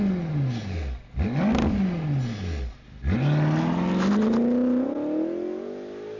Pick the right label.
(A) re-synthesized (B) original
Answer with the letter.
B